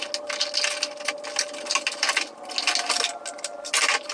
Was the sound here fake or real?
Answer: real